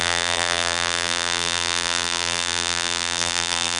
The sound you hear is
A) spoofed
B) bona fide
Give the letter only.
A